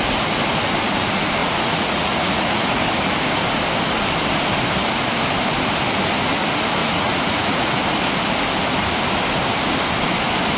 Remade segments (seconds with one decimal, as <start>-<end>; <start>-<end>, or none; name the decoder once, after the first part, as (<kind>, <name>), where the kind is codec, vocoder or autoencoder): 1.4-2.8 (vocoder, Vocos); 6.8-7.7